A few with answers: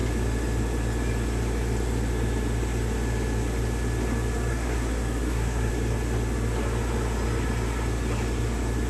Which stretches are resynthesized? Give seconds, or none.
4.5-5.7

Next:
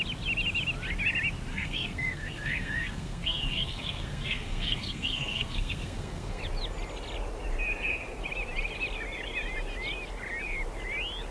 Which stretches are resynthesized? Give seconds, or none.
1.5-6.4

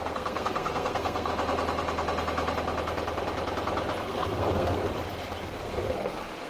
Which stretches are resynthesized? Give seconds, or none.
0.0-1.3; 4.0-4.8; 5.4-6.5

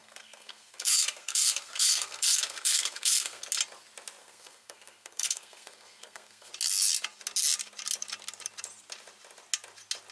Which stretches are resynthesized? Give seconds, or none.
0.0-3.4; 4.2-6.5

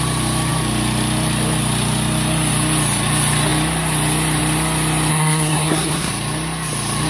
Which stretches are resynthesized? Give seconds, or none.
5.1-6.1

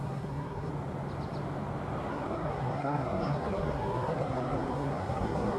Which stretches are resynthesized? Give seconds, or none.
0.0-0.7; 2.1-5.6

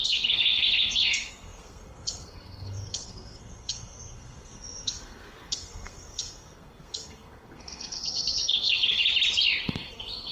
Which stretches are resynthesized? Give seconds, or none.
0.0-9.0; 9.7-10.3

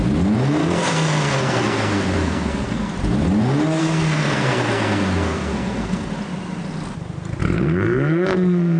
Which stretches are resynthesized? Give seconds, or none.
0.6-2.9; 3.8-6.1; 7.4-8.8